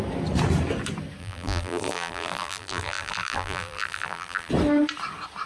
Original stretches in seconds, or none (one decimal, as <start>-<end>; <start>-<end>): 0.0-1.2; 4.5-5.5